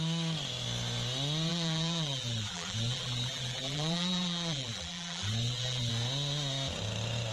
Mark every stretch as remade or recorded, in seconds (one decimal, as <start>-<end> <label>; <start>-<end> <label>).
0.0-1.5 recorded; 1.5-5.9 remade; 5.9-7.3 recorded